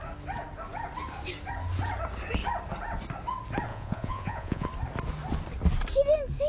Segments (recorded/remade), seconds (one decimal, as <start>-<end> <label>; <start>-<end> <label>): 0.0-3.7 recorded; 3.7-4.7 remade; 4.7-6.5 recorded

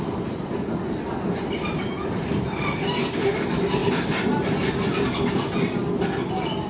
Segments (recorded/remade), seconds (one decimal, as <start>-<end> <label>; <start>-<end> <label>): 0.0-6.7 recorded

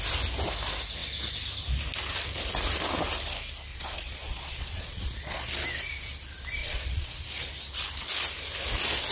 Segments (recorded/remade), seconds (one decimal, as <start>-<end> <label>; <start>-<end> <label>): 0.0-3.7 recorded; 3.7-5.4 remade; 5.4-6.6 recorded; 6.6-7.2 remade; 7.2-9.1 recorded

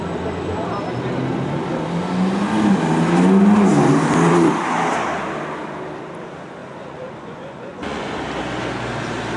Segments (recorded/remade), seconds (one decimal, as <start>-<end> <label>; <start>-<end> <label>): 0.0-6.6 recorded; 6.6-8.2 remade; 8.2-9.4 recorded

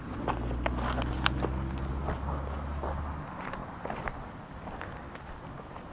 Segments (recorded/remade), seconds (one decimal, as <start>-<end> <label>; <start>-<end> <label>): 0.0-5.9 recorded

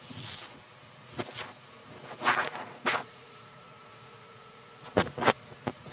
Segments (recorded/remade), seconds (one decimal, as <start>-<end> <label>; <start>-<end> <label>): 0.0-2.4 recorded; 2.4-5.9 remade